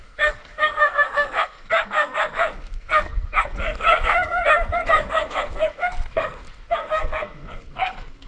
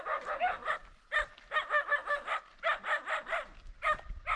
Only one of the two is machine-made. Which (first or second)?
first